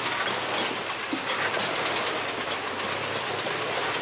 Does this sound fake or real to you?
real